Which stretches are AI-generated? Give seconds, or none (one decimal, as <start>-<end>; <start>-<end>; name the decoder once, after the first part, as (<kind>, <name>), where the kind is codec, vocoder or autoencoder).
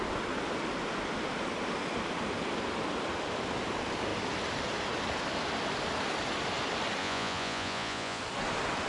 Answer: 7.0-8.2 (vocoder, Vocos)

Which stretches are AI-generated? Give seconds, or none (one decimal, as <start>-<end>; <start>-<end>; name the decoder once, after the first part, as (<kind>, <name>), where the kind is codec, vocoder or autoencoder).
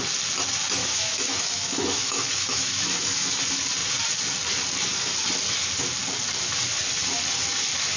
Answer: 0.8-3.4 (autoencoder, DAC-VAE)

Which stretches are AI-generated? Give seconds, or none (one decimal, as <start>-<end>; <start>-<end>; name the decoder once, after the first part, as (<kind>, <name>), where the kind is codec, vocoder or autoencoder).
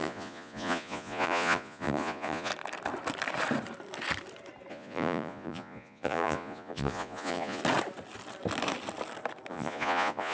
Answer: 0.0-2.5 (vocoder, Vocos); 4.7-7.6; 9.5-10.3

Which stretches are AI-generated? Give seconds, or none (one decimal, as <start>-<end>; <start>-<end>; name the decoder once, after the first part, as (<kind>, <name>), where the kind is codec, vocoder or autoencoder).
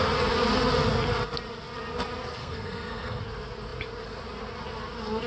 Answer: 2.4-3.2 (codec, SNAC)